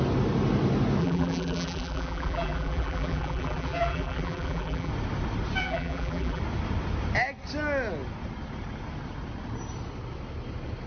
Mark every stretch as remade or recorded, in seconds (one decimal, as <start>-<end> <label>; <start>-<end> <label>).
0.0-1.0 recorded; 1.0-4.9 remade; 4.9-5.6 recorded; 5.6-6.4 remade; 6.4-10.9 recorded